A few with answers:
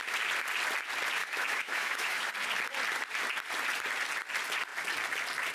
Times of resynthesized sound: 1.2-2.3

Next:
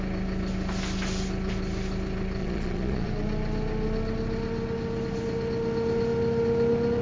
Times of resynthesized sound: 2.4-3.1

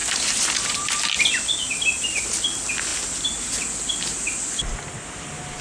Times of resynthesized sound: none

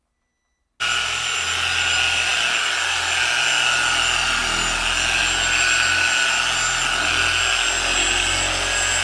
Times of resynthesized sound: none

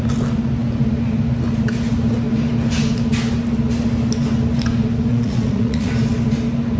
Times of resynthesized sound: 5.1-5.9